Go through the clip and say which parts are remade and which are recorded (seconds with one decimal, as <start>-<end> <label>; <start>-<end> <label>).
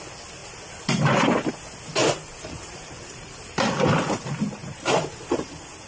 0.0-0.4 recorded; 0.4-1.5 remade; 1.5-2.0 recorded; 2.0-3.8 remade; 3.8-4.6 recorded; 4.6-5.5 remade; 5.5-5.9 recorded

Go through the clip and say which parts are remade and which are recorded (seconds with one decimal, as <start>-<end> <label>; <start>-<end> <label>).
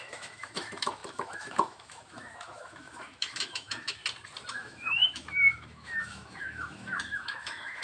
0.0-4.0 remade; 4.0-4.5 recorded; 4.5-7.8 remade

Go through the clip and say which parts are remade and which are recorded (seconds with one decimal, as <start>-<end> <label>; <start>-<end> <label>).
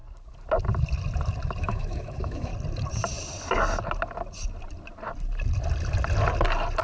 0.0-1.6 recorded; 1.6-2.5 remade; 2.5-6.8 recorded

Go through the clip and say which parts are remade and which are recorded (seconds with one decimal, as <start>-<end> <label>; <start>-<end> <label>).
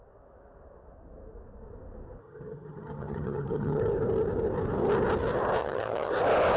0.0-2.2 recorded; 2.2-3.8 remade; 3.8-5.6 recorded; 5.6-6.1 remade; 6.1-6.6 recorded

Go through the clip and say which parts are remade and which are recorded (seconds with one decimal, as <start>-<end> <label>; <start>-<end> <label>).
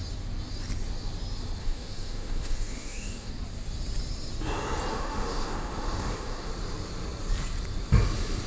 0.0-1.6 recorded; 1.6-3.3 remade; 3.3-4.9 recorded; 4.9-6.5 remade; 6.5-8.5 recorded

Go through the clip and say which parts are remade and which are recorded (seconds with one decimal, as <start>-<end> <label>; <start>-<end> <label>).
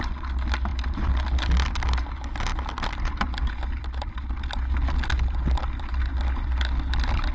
0.0-7.3 recorded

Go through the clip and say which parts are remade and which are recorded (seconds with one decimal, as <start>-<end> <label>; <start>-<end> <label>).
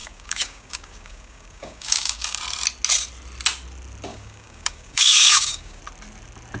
0.0-2.4 remade; 2.4-4.1 recorded; 4.1-5.8 remade; 5.8-6.6 recorded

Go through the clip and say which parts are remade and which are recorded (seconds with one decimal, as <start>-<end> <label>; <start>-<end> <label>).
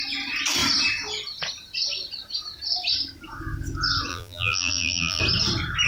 0.0-4.1 recorded; 4.1-5.2 remade; 5.2-5.9 recorded